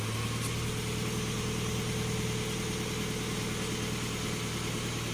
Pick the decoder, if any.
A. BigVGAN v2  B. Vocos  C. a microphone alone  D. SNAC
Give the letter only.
C